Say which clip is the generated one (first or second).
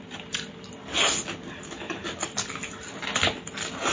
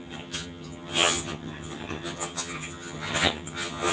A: second